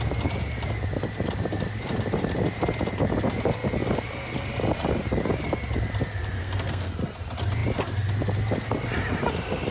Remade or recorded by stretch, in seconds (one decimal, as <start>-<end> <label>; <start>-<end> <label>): 0.0-6.4 recorded; 6.4-6.9 remade; 6.9-9.7 recorded